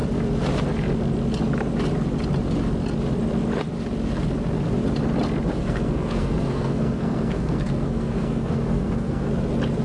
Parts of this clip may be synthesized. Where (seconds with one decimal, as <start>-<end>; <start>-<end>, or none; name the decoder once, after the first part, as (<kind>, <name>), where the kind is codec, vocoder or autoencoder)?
5.6-9.3 (codec, SNAC)

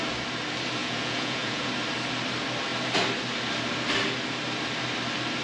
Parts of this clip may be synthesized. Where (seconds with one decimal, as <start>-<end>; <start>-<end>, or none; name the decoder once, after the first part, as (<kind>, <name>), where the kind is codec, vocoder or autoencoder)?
0.8-1.7 (vocoder, Vocos)

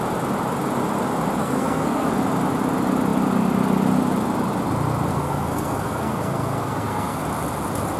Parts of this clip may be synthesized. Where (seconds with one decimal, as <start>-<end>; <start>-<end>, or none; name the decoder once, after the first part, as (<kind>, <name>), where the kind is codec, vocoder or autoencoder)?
1.4-2.1 (codec, SNAC); 5.1-7.2